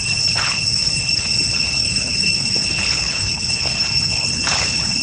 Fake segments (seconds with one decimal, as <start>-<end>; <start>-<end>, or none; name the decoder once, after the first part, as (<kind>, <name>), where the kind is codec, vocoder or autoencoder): 0.0-5.0 (codec, HILCodec)